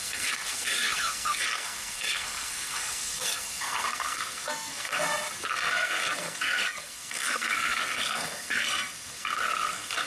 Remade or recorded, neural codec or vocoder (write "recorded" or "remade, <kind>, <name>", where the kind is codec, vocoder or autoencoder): remade, codec, SNAC